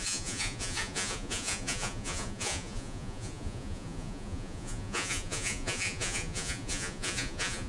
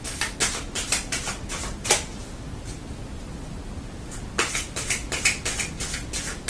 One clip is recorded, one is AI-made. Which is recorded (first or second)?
second